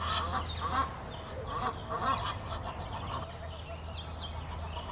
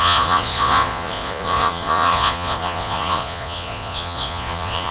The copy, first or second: second